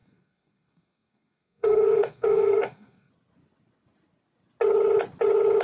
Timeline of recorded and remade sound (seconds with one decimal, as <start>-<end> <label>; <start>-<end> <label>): 0.0-3.1 remade; 3.1-5.6 recorded